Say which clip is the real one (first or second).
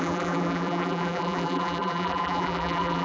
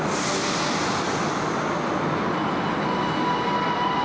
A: second